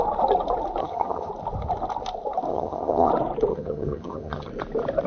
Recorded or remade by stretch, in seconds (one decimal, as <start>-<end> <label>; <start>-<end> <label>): 0.0-0.8 recorded; 0.8-1.3 remade; 1.3-2.5 recorded; 2.5-3.1 remade; 3.1-3.5 recorded; 3.5-4.5 remade; 4.5-5.1 recorded